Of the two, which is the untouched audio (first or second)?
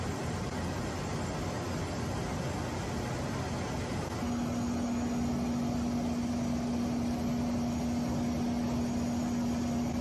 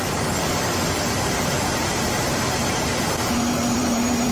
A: first